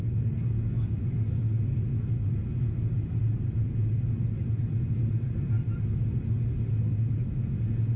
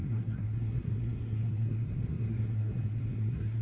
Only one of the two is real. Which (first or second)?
first